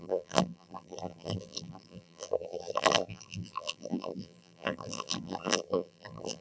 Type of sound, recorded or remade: remade